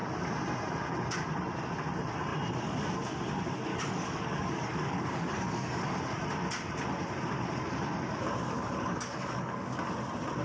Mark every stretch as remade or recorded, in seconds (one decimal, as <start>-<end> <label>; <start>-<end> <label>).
0.0-3.7 recorded; 3.7-6.0 remade; 6.0-8.4 recorded; 8.4-9.9 remade; 9.9-10.4 recorded